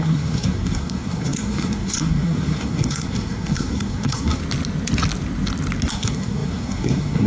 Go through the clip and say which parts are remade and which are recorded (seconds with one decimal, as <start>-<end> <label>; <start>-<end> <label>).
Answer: 0.0-4.4 remade; 4.4-5.9 recorded; 5.9-7.3 remade